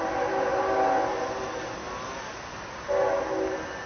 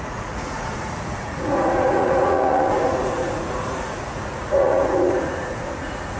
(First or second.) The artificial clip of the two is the second